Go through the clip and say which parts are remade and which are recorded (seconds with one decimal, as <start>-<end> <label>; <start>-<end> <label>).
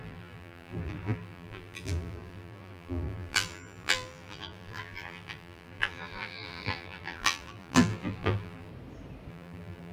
0.0-8.7 remade; 8.7-9.3 recorded; 9.3-9.9 remade